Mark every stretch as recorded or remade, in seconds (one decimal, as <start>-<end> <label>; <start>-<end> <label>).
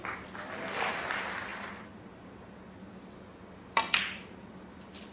0.0-5.1 recorded